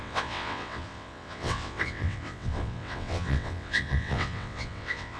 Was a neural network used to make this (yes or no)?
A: yes